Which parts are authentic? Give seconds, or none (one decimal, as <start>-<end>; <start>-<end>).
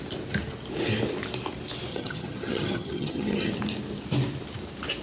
0.0-1.9; 3.5-5.0